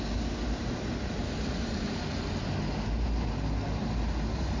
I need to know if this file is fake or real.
real